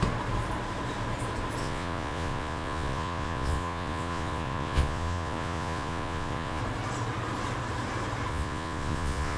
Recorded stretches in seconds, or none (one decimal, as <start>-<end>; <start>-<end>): 0.0-1.6; 6.6-8.3